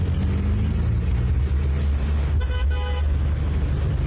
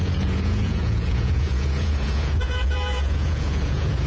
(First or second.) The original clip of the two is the first